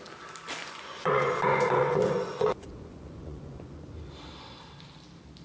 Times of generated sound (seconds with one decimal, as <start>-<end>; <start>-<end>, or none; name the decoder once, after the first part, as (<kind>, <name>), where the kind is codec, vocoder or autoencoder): 0.6-3.8 (vocoder, Vocos)